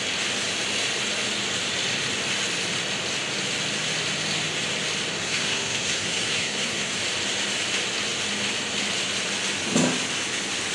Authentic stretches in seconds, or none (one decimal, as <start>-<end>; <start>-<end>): 0.0-5.2; 6.9-10.7